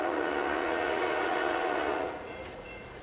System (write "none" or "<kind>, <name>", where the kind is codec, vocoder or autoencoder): vocoder, Vocos